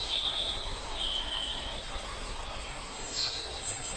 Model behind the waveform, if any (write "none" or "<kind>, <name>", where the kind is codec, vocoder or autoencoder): codec, SNAC